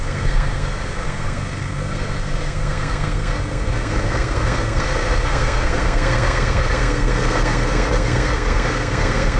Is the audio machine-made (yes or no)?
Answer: yes